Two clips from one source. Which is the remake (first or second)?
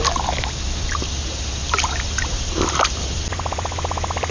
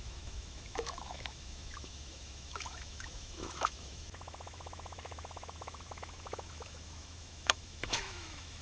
second